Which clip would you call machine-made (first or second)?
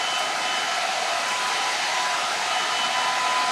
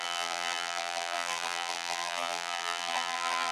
second